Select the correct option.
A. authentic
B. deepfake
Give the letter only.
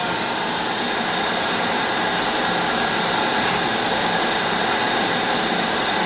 A